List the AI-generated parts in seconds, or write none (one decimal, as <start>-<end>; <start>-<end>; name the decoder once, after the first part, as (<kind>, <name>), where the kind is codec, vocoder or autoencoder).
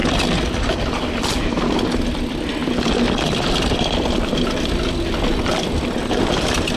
0.8-2.6 (vocoder, BigVGAN v2); 3.2-6.8